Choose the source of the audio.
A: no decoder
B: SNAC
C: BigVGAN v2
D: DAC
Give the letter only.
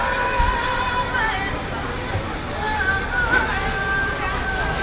A